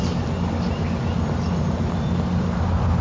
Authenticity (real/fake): real